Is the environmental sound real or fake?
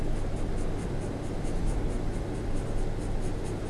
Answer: real